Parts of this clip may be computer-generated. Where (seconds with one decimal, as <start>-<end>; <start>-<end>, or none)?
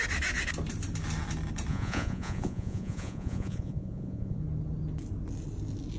1.7-4.4